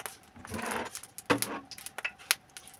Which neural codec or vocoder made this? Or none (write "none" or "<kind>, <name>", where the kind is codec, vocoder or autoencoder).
none